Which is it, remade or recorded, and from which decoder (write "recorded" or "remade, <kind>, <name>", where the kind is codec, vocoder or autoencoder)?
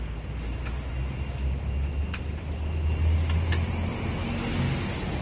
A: recorded